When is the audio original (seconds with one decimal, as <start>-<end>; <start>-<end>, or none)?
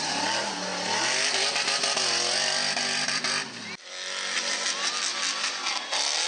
0.0-6.3